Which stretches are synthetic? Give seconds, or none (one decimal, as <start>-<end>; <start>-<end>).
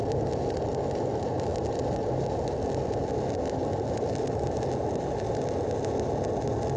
none